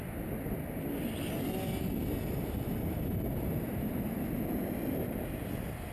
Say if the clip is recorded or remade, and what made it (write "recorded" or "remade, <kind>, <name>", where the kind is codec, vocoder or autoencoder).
recorded